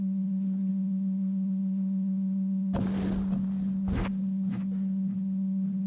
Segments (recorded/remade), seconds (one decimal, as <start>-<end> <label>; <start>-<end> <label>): 0.0-5.9 recorded